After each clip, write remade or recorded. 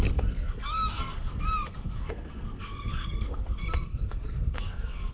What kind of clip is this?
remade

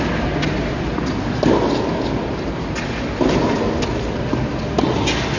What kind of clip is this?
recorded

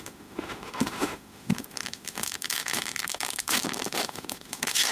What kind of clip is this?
remade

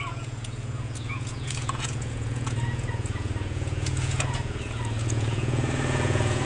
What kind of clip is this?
remade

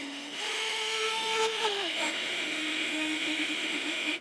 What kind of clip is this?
remade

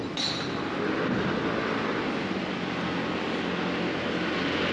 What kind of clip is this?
recorded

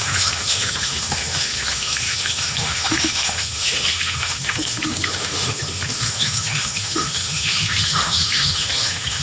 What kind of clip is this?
remade